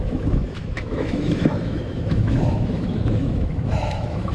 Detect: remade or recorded remade